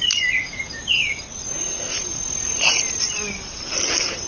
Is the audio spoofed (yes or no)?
no